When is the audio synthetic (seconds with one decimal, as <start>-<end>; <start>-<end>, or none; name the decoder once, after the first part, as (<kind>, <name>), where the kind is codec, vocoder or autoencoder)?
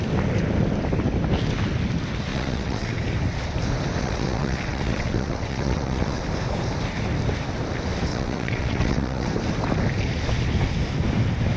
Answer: 2.3-2.9 (vocoder, WaveNeXt); 4.0-6.2; 8.1-9.3